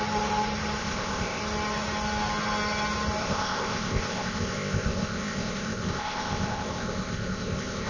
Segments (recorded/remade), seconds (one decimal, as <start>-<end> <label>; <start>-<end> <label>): 0.0-0.8 recorded; 0.8-1.4 remade; 1.4-3.2 recorded; 3.2-7.9 remade